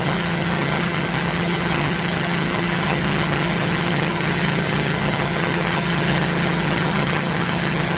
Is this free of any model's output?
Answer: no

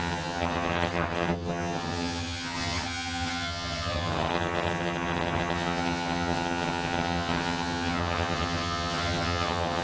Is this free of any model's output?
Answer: no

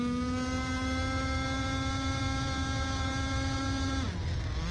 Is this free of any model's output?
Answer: yes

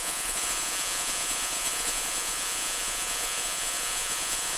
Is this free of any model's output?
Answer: no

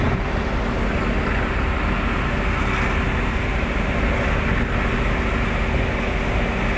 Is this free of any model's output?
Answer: yes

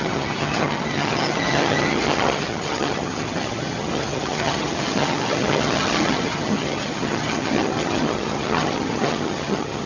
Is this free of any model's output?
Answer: no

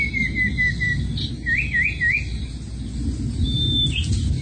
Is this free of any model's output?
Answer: yes